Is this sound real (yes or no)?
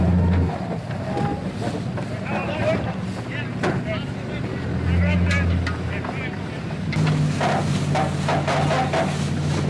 yes